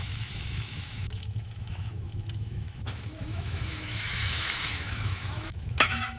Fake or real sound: fake